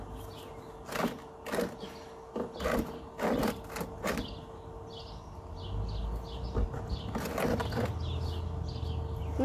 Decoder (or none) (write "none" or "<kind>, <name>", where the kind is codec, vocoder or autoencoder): none